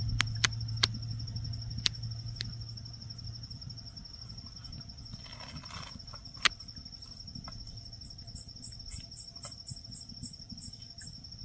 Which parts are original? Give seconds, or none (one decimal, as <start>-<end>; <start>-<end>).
0.0-11.4